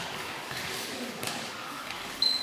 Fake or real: fake